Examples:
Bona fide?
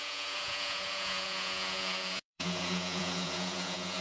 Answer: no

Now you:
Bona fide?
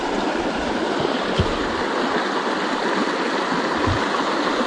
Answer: yes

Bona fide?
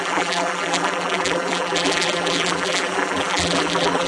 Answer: no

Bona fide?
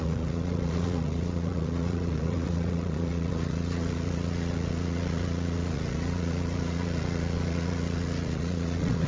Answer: no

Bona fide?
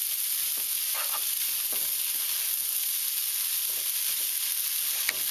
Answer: yes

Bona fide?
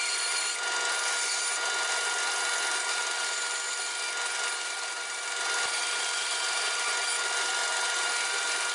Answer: yes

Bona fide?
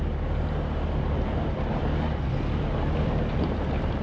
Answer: yes